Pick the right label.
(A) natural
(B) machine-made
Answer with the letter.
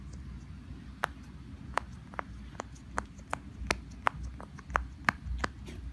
A